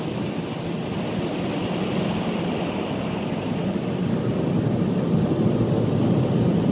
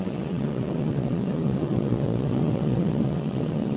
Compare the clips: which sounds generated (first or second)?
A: second